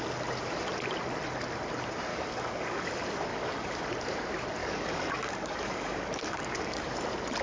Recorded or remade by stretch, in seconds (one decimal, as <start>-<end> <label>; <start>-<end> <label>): 0.0-2.1 recorded; 2.1-2.9 remade; 2.9-3.3 recorded; 3.3-3.8 remade; 3.8-4.6 recorded; 4.6-6.9 remade; 6.9-7.4 recorded